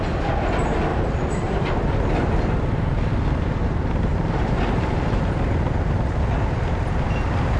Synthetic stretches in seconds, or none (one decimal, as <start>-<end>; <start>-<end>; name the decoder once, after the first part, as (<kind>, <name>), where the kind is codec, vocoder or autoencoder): 0.9-1.7 (vocoder, BigVGAN v2); 4.1-6.3